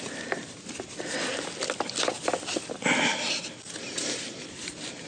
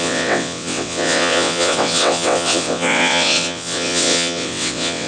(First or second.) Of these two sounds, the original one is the first